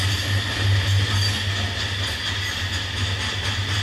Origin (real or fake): real